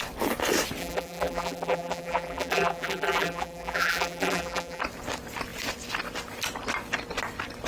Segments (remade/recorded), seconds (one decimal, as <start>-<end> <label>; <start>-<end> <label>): 0.0-0.8 recorded; 0.8-4.8 remade; 4.8-7.7 recorded